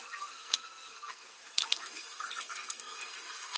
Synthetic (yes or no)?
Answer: yes